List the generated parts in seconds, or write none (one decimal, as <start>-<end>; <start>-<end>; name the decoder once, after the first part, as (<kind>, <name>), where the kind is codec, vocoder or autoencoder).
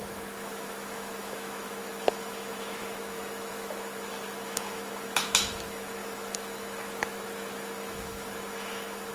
0.0-9.1 (autoencoder, DAC-VAE)